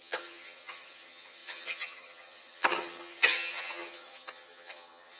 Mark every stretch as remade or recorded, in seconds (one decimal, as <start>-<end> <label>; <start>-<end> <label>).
0.0-5.2 remade